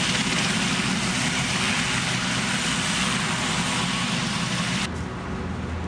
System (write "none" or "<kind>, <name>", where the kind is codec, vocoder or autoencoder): none